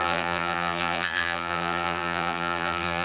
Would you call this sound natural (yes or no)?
no